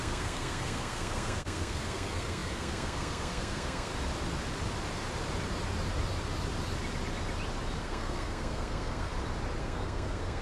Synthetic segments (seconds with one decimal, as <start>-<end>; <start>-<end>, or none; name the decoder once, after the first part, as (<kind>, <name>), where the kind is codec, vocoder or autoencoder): 0.0-3.9 (codec, SNAC); 7.8-9.1; 9.6-10.4